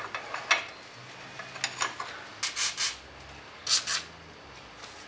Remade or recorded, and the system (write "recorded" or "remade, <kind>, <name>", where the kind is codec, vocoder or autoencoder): recorded